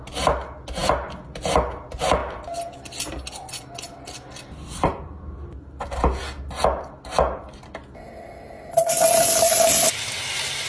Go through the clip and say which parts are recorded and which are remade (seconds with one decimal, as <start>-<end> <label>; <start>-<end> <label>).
0.0-10.7 recorded